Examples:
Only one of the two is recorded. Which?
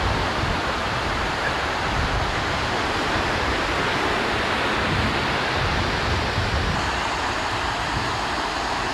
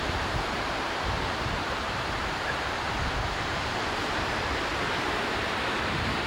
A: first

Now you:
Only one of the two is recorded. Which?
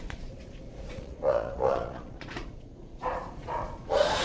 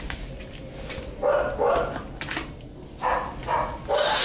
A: second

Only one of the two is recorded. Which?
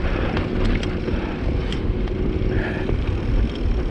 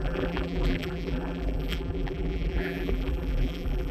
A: first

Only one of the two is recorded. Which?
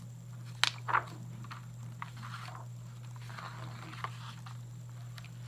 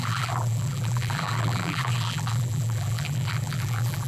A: first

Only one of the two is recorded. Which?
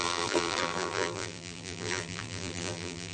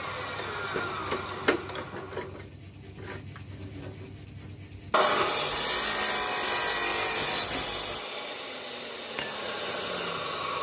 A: second